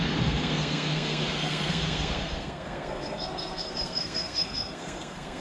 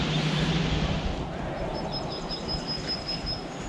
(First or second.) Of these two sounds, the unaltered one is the second